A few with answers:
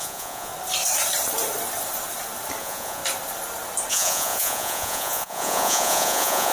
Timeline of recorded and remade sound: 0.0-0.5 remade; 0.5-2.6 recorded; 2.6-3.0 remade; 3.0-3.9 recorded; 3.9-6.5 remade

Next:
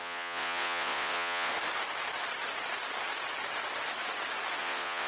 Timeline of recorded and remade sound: 0.0-1.5 remade; 1.5-4.6 recorded; 4.6-5.1 remade

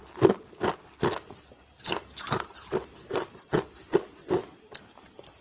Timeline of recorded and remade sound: 0.0-5.4 recorded

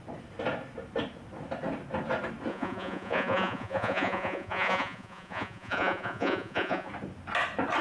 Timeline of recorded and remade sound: 0.0-2.5 recorded; 2.5-6.9 remade; 6.9-7.8 recorded

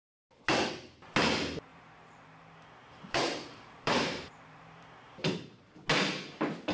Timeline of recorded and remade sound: 0.0-1.7 recorded; 1.7-5.7 remade; 5.7-6.7 recorded